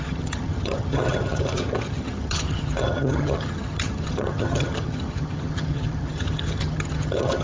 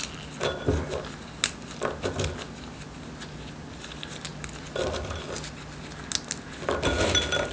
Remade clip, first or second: first